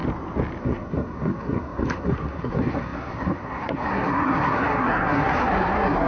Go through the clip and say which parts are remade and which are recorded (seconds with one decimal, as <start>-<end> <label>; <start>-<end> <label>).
0.0-0.6 recorded; 0.6-6.1 remade